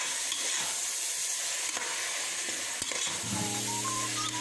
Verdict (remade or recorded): recorded